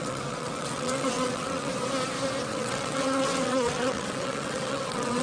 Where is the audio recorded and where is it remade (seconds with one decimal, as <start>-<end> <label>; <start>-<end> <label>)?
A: 0.0-1.7 remade; 1.7-2.5 recorded; 2.5-5.2 remade